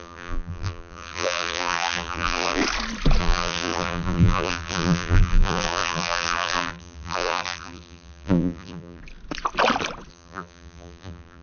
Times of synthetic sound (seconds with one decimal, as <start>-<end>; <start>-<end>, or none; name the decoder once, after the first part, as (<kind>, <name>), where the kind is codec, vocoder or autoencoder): 0.0-2.6 (vocoder, BigVGAN v2); 3.2-9.0; 10.1-11.4